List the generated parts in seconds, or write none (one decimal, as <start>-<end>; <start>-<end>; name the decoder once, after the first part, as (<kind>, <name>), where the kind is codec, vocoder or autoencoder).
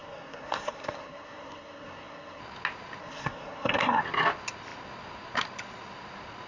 0.0-2.4 (codec, SNAC); 3.0-4.0